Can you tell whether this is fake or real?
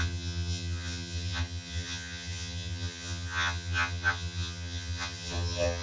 fake